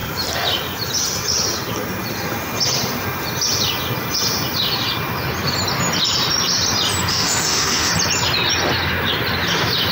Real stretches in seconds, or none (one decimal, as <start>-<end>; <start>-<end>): 0.0-7.1; 7.9-9.9